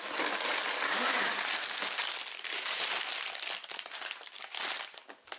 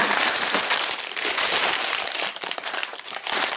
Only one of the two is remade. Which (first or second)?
second